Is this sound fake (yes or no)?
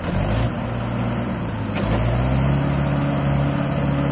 no